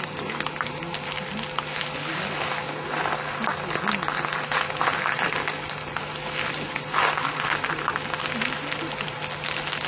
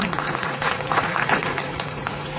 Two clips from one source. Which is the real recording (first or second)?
first